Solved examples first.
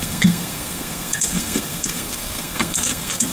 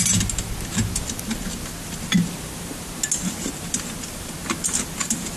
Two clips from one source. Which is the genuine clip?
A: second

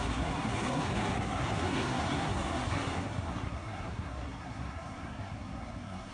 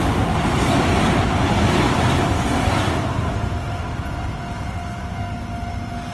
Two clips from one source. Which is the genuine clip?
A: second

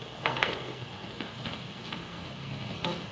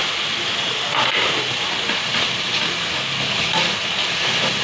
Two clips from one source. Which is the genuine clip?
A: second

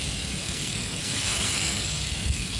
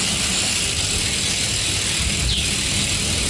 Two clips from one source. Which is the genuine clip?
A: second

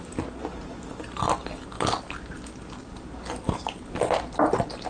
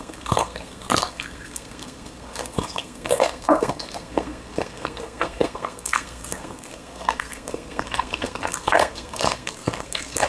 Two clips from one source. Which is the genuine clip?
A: first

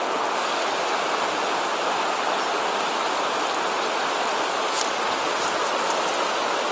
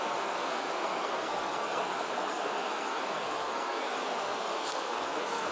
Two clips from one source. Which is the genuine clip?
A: first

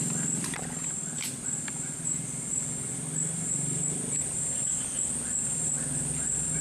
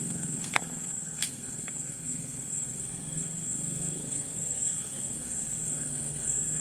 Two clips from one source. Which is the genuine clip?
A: first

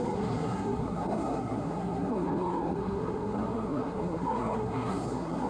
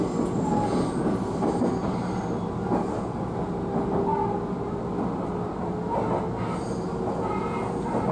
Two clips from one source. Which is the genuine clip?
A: second